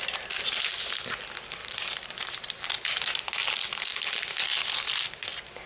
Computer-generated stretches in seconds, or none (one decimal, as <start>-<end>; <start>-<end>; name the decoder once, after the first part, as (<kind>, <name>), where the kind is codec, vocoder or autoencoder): 1.6-2.6 (vocoder, BigVGAN v2)